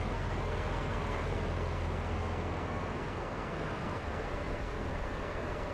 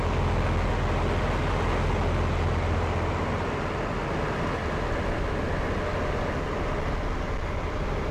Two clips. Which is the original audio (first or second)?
second